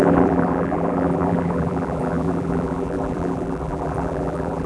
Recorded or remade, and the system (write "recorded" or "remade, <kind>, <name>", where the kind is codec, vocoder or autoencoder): remade, vocoder, BigVGAN v2